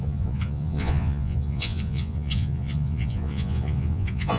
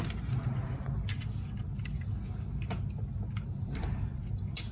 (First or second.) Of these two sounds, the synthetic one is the first